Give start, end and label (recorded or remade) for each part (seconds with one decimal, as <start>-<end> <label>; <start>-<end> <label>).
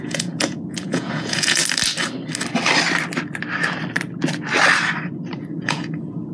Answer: 0.0-1.6 remade; 1.6-5.4 recorded; 5.4-6.3 remade